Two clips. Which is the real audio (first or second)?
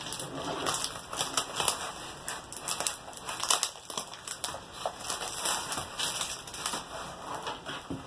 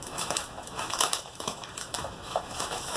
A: first